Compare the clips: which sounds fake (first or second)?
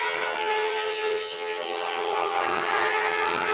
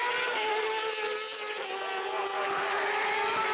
first